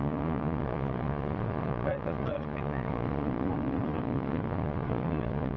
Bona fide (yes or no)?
no